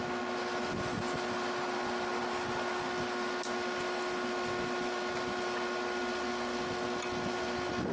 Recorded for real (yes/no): yes